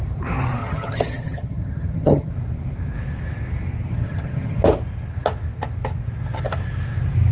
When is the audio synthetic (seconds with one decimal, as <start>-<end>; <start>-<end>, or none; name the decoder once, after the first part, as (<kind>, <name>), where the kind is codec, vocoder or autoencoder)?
0.6-2.3 (vocoder, HiFi-GAN); 3.9-4.6